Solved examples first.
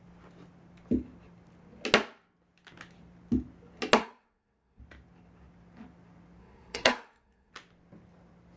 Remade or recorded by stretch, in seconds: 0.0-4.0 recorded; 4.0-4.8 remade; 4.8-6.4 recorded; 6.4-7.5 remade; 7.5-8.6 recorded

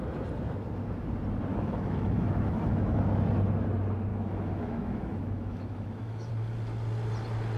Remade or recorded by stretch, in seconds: 0.0-1.5 recorded; 1.5-3.0 remade; 3.0-4.1 recorded; 4.1-6.3 remade; 6.3-7.6 recorded

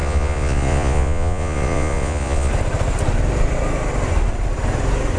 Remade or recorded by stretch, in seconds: 0.0-2.5 remade; 2.5-5.2 recorded

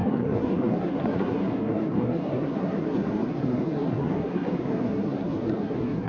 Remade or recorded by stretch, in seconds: 0.0-6.1 remade

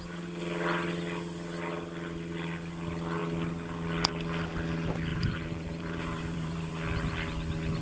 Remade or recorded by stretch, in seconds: 0.0-5.1 recorded; 5.1-6.7 remade; 6.7-7.8 recorded